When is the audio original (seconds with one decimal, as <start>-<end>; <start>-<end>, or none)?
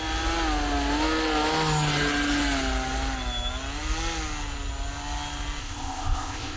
0.0-5.6